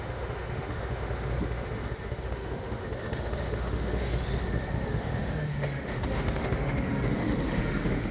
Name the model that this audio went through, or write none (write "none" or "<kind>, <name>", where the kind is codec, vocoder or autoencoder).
autoencoder, DAC-VAE